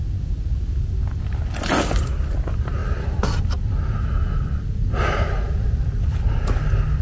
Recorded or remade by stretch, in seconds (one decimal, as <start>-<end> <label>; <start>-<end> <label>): 0.0-7.0 recorded